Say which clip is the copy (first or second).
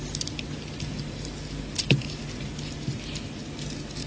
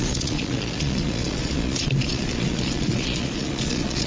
second